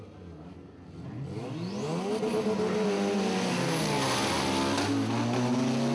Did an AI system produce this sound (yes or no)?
no